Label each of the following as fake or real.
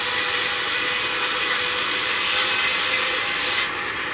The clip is real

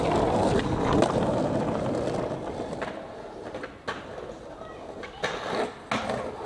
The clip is real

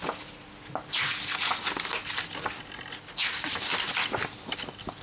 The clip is real